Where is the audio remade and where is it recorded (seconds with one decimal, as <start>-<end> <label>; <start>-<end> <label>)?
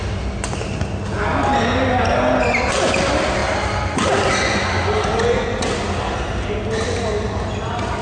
0.0-8.0 recorded